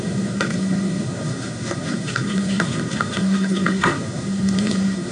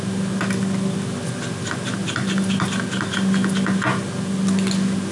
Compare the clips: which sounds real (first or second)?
second